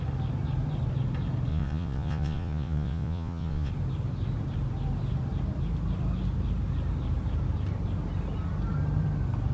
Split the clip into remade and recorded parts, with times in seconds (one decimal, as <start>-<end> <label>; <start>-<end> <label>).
0.0-1.5 recorded; 1.5-3.7 remade; 3.7-9.5 recorded